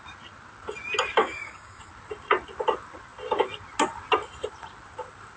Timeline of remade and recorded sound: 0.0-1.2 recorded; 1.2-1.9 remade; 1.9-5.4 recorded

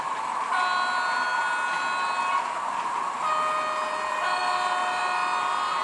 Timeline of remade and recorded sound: 0.0-5.8 recorded